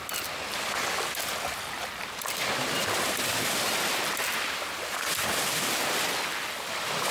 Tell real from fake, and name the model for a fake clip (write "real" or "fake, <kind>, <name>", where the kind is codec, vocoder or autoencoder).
real